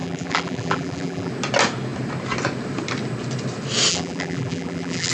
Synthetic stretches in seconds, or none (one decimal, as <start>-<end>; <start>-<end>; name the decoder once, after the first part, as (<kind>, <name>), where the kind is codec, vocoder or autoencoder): 0.0-1.3 (vocoder, BigVGAN v2); 3.9-5.1